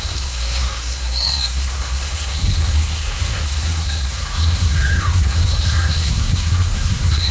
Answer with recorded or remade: remade